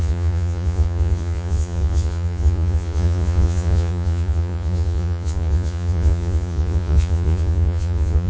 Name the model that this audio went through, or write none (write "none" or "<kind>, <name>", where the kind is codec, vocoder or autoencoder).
vocoder, Vocos